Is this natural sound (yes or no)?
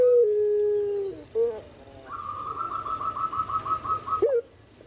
yes